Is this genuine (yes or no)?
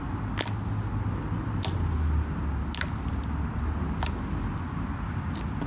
yes